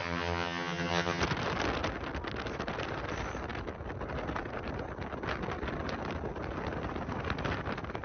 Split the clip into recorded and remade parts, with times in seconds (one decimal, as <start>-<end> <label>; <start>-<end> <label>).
0.0-1.2 remade; 1.2-8.0 recorded

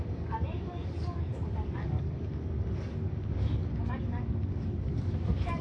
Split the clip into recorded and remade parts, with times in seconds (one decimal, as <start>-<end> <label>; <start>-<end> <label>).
0.0-5.6 remade